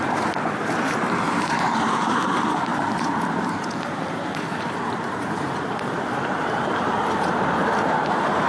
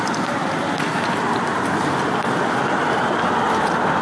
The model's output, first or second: first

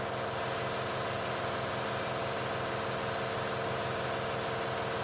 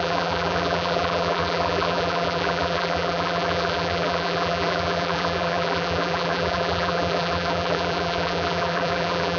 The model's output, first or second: second